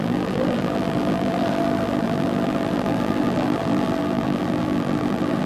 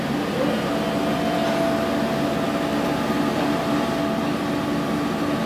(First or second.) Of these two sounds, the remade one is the first